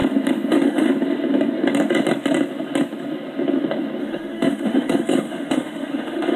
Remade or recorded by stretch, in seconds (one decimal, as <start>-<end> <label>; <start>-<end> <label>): 0.0-0.5 recorded; 0.5-0.9 remade; 0.9-4.0 recorded; 4.0-6.4 remade